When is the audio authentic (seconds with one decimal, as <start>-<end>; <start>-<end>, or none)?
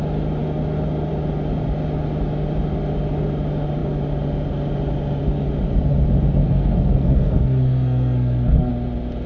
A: 0.0-6.4; 8.7-9.3